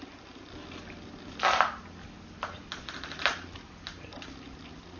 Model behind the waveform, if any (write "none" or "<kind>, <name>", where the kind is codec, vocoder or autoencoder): none